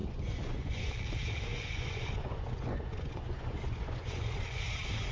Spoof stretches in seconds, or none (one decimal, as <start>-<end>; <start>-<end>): 0.0-0.9; 1.5-4.6